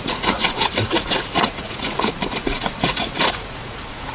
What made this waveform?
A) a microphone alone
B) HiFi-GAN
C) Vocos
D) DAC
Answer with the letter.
C